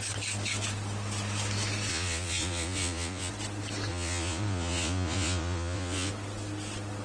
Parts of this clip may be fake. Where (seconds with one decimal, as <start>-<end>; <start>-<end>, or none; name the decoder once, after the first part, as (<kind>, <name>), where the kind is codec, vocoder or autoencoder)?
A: 1.9-3.3 (vocoder, Vocos); 3.9-6.1